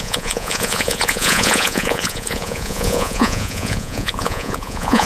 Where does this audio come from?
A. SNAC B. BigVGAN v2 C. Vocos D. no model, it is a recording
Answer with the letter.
C